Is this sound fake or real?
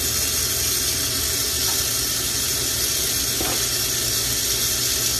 real